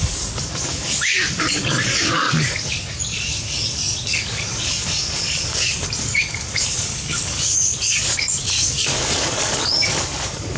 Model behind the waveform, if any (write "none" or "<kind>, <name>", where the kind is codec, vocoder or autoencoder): codec, DAC